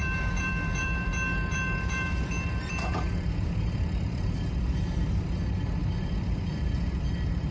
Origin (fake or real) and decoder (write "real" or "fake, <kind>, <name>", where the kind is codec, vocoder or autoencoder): fake, vocoder, BigVGAN v2